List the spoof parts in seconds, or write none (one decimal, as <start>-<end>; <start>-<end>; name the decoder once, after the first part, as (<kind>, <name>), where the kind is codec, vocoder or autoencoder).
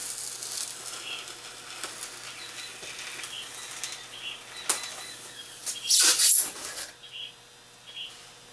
none